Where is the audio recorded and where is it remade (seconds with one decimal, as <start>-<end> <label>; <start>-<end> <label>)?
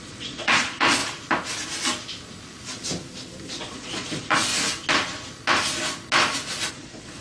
0.0-1.0 remade; 1.0-3.5 recorded; 3.5-4.5 remade; 4.5-6.7 recorded; 6.7-7.2 remade